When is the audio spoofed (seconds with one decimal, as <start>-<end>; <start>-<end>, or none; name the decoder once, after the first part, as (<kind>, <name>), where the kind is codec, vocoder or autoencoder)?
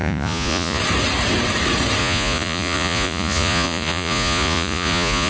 0.0-0.8 (vocoder, Vocos); 2.0-5.3